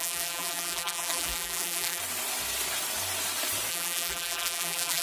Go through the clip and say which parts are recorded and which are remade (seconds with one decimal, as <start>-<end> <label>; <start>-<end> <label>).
0.0-2.0 remade; 2.0-3.7 recorded; 3.7-5.0 remade